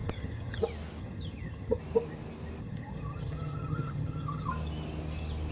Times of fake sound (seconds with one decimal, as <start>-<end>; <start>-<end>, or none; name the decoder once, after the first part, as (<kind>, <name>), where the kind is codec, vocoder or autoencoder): 0.0-0.6 (vocoder, HiFi-GAN); 1.0-1.8; 2.6-4.5